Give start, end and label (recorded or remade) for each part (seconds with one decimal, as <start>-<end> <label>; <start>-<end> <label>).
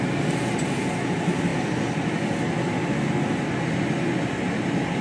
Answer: 0.0-5.0 recorded